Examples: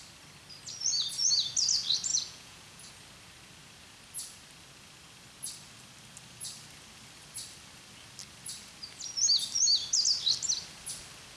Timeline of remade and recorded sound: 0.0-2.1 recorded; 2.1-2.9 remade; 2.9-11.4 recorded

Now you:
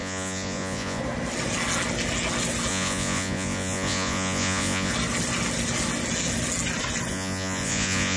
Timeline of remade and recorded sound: 0.0-1.0 remade; 1.0-2.7 recorded; 2.7-4.9 remade; 4.9-7.1 recorded; 7.1-8.2 remade

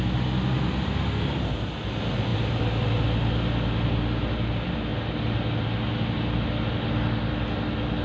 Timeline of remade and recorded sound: 0.0-8.0 recorded

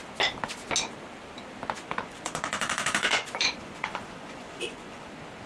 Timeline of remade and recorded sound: 0.0-1.8 recorded; 1.8-5.1 remade; 5.1-5.5 recorded